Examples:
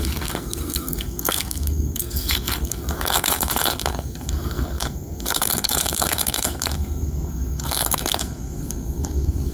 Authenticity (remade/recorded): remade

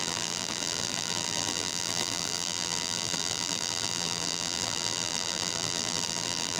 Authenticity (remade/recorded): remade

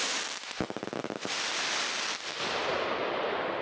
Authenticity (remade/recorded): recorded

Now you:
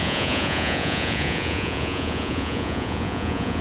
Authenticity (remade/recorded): remade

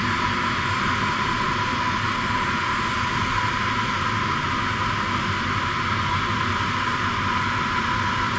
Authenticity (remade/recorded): recorded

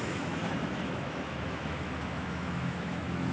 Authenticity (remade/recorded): remade